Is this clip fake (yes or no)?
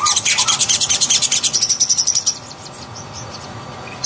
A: yes